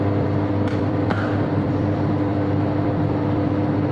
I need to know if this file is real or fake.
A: fake